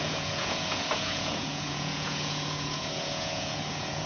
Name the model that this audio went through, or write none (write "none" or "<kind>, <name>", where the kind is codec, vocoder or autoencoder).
vocoder, Vocos